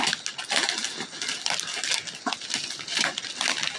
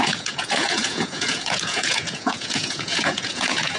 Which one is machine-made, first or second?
second